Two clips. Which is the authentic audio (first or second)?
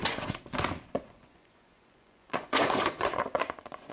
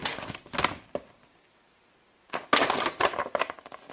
second